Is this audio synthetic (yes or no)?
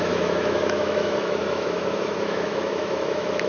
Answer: yes